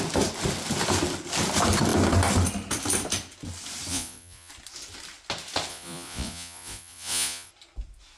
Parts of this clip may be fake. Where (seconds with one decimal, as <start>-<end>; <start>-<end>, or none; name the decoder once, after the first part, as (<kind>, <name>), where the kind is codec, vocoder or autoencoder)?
3.9-4.5 (vocoder, Vocos); 5.7-7.5